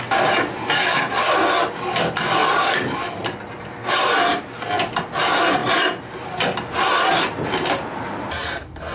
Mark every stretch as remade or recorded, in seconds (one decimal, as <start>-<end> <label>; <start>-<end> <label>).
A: 0.0-8.9 recorded